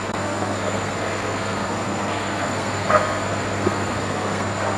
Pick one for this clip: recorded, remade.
remade